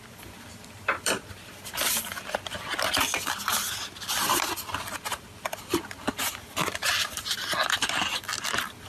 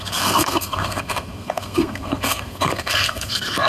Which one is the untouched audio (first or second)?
first